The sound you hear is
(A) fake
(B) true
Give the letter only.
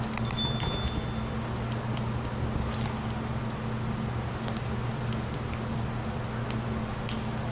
B